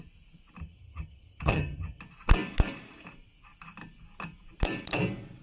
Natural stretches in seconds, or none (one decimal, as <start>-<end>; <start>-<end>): 0.0-0.6; 2.0-5.4